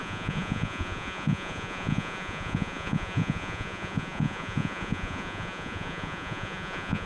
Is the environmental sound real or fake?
fake